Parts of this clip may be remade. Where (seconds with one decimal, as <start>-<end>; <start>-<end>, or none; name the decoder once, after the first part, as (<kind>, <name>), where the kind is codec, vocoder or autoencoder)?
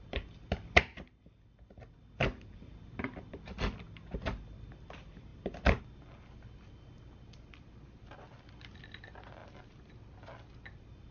none